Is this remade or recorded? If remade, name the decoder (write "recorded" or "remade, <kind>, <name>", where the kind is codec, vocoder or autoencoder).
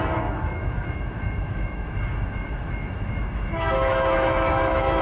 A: remade, autoencoder, DAC-VAE